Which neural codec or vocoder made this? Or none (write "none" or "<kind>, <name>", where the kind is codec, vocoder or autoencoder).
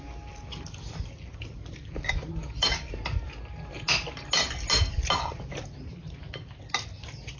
none